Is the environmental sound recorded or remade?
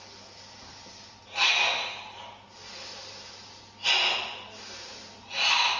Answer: recorded